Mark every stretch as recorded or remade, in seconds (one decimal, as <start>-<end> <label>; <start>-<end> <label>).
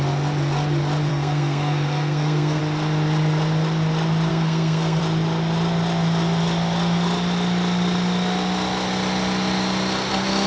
0.0-1.1 recorded; 1.1-2.6 remade; 2.6-4.3 recorded; 4.3-5.0 remade; 5.0-10.5 recorded